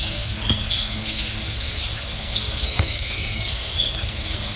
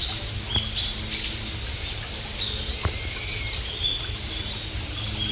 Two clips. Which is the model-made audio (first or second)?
first